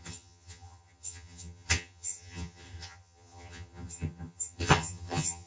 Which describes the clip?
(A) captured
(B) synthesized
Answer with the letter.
B